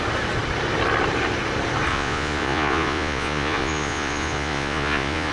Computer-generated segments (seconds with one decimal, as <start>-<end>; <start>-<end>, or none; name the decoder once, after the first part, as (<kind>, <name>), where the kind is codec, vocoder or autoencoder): 1.9-5.3 (vocoder, Vocos)